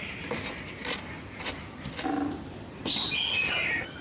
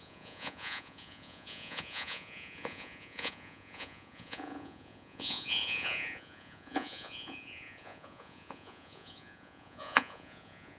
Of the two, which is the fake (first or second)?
second